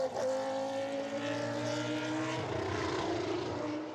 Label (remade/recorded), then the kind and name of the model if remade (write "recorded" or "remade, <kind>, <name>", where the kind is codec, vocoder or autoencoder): recorded